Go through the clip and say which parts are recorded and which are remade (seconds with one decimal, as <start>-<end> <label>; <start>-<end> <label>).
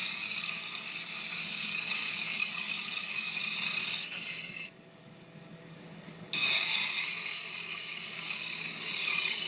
0.0-3.4 remade; 3.4-4.0 recorded; 4.0-9.5 remade